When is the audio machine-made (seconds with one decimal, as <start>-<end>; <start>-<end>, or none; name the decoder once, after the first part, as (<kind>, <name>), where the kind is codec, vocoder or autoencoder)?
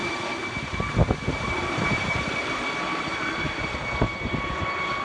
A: none